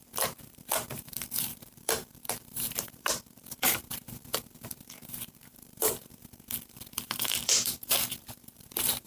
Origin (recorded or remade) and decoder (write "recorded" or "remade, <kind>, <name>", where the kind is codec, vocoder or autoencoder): remade, vocoder, BigVGAN v2